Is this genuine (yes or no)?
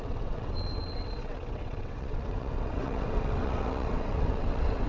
no